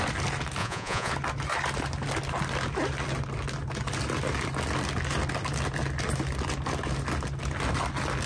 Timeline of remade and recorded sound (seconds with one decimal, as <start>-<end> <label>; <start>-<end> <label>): 0.0-0.6 recorded; 0.6-1.1 remade; 1.1-8.3 recorded

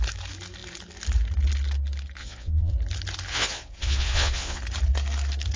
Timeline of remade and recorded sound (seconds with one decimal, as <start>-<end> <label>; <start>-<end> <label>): 0.0-2.2 recorded; 2.2-2.7 remade; 2.7-3.3 recorded; 3.3-4.6 remade; 4.6-5.6 recorded

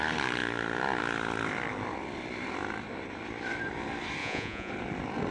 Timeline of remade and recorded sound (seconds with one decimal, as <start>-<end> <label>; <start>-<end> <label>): 0.0-4.2 recorded; 4.2-4.7 remade; 4.7-5.3 recorded

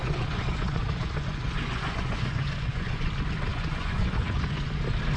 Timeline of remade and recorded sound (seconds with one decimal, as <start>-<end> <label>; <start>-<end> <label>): 0.0-3.1 remade; 3.1-3.5 recorded; 3.5-4.7 remade; 4.7-5.2 recorded

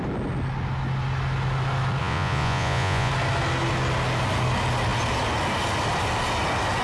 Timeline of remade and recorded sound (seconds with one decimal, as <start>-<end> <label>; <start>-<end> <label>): 0.0-2.0 recorded; 2.0-3.1 remade; 3.1-6.8 recorded

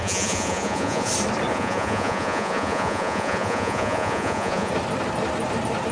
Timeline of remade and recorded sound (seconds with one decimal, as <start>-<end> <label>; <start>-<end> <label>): 0.0-1.1 remade; 1.1-1.5 recorded; 1.5-4.7 remade; 4.7-5.9 recorded